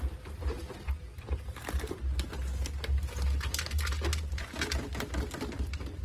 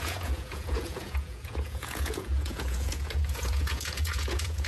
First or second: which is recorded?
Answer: first